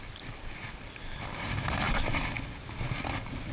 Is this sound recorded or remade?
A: recorded